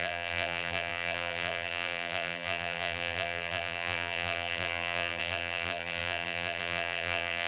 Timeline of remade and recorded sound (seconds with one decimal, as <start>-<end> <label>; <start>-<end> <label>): 0.0-7.5 remade